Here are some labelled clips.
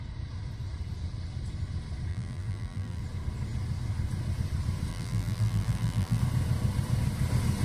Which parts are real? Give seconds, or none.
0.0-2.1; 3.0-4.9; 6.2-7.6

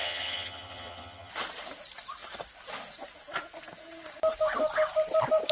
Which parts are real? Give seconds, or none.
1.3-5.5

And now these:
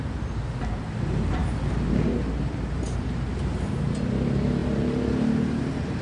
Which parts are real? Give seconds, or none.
0.0-1.4; 4.0-6.0

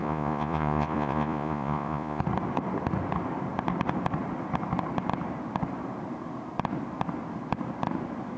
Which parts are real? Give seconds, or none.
2.2-8.4

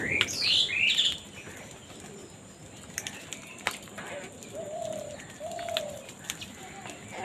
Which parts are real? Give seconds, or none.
0.0-7.2